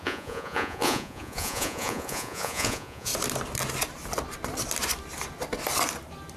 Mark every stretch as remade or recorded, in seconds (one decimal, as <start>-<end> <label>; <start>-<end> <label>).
0.0-3.1 remade; 3.1-6.4 recorded